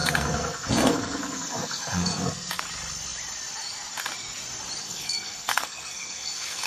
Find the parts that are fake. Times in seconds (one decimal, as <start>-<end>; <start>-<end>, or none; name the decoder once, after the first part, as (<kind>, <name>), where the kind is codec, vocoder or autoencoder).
0.0-2.6 (codec, SNAC); 4.8-6.7